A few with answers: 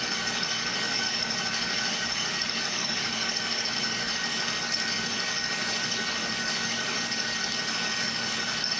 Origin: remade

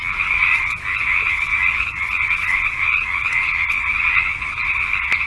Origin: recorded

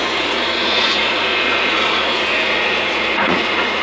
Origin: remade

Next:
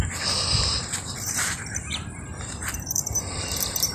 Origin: remade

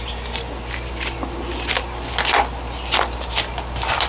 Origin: recorded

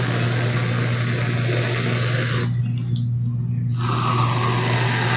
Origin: recorded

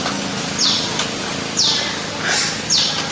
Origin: recorded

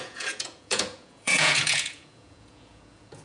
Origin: remade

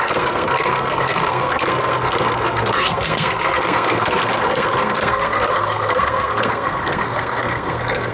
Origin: remade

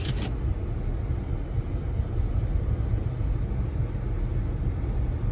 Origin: recorded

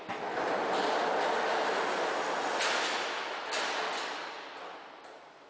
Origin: recorded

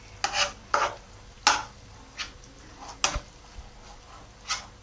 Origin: recorded